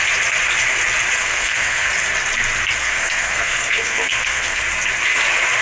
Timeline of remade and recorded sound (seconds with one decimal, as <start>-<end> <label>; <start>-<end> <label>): 0.0-1.2 recorded; 1.2-1.9 remade; 1.9-2.8 recorded; 2.8-4.6 remade; 4.6-5.6 recorded